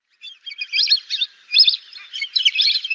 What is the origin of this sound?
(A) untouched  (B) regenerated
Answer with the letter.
A